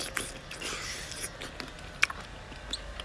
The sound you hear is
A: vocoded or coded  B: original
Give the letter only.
B